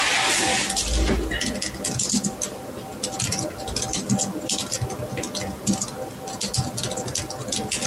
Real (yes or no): yes